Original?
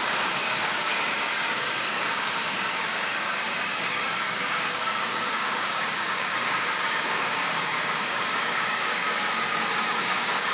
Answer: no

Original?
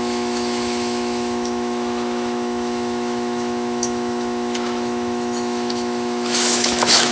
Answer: no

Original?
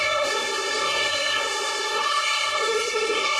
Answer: no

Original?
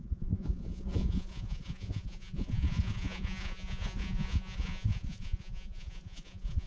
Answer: no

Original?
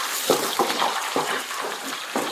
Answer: no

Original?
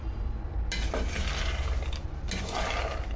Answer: yes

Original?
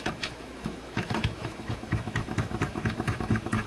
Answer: no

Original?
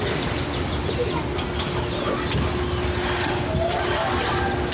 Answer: yes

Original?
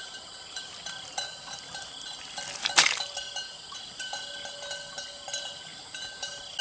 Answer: yes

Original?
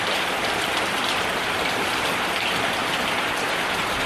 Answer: yes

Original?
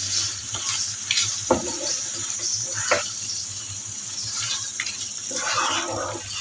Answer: no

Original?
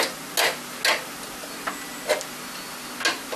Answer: yes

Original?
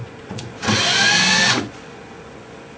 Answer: no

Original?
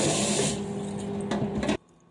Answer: yes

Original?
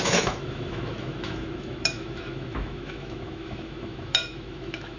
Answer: no